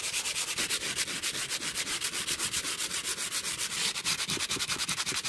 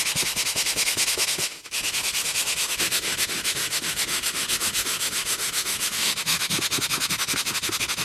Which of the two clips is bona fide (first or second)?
first